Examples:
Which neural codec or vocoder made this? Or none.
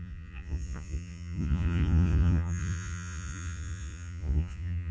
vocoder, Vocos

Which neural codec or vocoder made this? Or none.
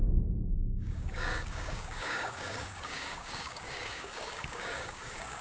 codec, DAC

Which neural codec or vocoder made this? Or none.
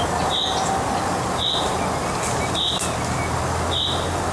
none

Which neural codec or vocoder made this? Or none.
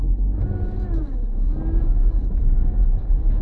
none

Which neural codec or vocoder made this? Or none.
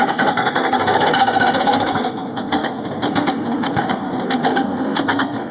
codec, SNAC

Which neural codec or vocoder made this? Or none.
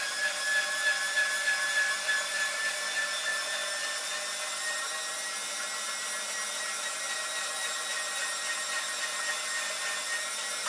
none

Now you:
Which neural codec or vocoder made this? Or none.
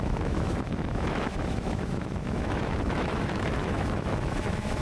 autoencoder, DAC-VAE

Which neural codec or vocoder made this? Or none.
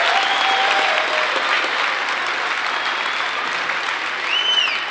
none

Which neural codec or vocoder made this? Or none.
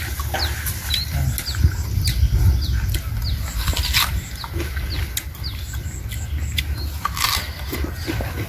none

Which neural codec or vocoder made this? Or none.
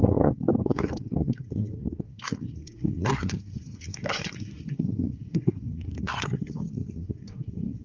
codec, SNAC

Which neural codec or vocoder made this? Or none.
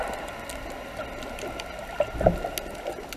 none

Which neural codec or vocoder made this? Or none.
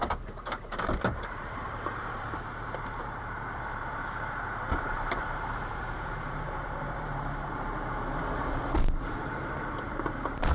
vocoder, BigVGAN v2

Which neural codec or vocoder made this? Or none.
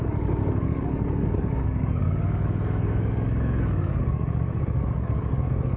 codec, DAC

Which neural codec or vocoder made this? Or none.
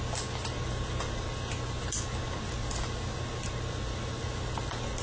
none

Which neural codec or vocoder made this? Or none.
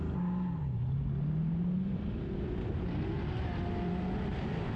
none